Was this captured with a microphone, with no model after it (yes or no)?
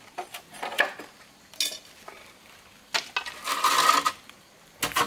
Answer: yes